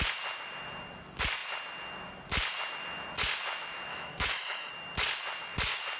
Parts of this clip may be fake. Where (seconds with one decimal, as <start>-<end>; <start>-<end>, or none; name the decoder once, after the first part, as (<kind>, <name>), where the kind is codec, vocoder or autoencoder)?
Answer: 3.9-4.7 (autoencoder, DAC-VAE)